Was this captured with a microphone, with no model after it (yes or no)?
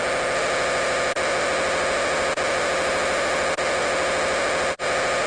yes